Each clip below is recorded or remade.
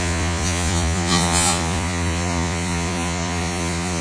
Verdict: remade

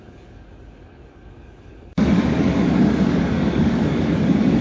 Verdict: remade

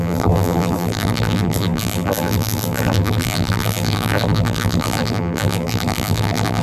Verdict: remade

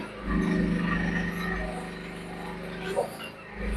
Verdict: recorded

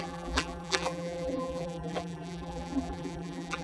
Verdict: remade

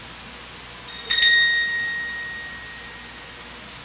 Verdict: recorded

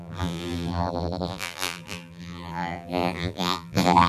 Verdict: remade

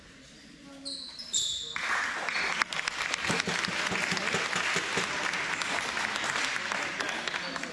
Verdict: recorded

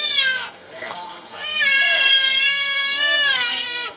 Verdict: remade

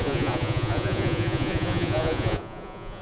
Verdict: remade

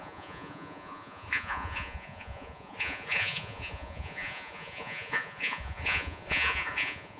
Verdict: remade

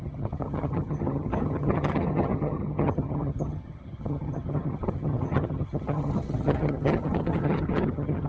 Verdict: remade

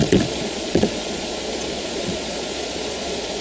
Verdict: remade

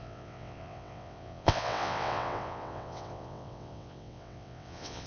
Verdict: remade